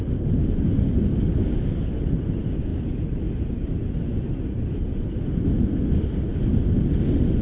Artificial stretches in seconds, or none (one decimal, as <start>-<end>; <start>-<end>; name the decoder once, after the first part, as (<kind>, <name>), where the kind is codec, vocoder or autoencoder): 1.1-1.9 (codec, DAC)